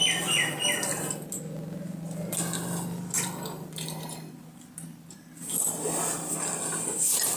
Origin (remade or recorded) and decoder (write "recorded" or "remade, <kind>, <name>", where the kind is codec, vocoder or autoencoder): recorded